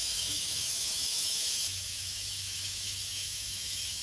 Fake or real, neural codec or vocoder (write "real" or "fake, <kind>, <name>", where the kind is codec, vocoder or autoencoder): fake, autoencoder, DAC-VAE